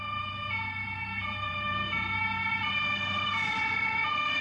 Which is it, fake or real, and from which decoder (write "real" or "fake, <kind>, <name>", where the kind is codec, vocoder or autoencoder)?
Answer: fake, vocoder, BigVGAN v2